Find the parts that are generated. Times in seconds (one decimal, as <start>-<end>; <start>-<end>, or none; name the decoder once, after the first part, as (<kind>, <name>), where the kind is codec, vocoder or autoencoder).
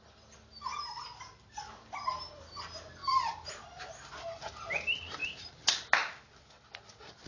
3.0-3.5 (vocoder, BigVGAN v2); 5.2-5.8